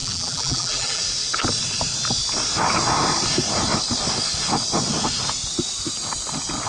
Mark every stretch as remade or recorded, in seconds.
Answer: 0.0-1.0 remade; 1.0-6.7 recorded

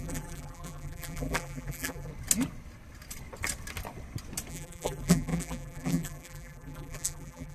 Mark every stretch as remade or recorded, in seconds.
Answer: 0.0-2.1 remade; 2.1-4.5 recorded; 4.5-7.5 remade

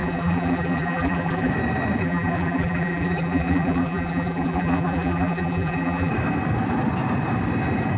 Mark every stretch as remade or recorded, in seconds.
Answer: 0.0-1.5 remade; 1.5-2.0 recorded; 2.0-6.1 remade; 6.1-8.0 recorded

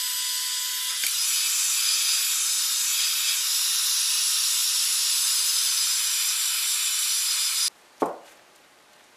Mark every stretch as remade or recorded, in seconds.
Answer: 0.0-9.2 recorded